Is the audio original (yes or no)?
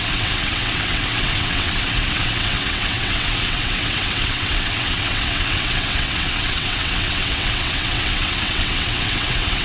no